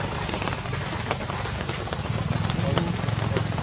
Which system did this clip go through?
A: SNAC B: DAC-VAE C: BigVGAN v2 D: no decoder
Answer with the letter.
D